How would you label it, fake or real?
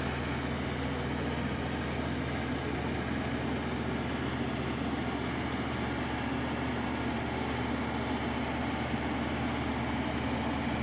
real